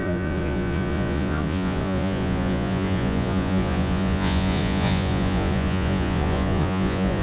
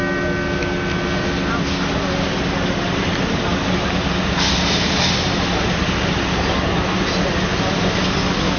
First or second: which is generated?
first